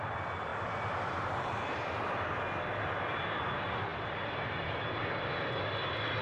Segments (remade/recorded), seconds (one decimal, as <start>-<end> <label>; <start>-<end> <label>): 0.0-6.2 recorded